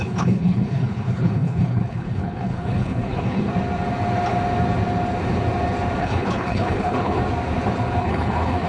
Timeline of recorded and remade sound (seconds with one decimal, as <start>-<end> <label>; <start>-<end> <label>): 0.0-3.5 remade; 3.5-6.0 recorded; 6.0-7.2 remade; 7.2-8.0 recorded; 8.0-8.7 remade